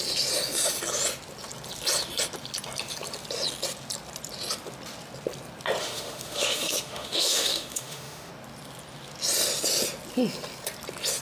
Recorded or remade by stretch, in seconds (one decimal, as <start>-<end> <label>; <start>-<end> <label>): 0.0-5.8 recorded; 5.8-8.3 remade; 8.3-11.2 recorded